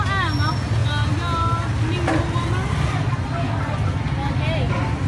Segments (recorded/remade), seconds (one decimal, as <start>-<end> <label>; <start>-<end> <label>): 0.0-5.1 recorded